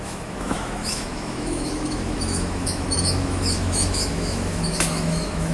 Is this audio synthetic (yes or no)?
yes